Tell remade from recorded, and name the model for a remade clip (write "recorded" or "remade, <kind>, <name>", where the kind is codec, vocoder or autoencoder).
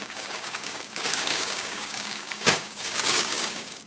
remade, codec, DAC